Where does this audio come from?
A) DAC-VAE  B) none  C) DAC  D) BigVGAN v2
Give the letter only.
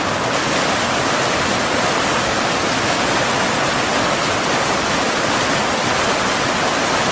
B